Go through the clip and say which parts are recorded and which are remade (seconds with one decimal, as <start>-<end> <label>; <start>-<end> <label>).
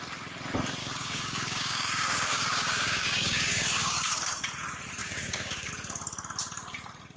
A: 0.0-0.8 recorded; 0.8-4.4 remade; 4.4-5.0 recorded; 5.0-5.7 remade; 5.7-7.2 recorded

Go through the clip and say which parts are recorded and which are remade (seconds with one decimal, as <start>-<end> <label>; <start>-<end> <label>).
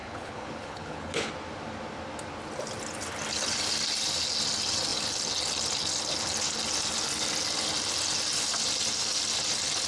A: 0.0-1.3 remade; 1.3-9.9 recorded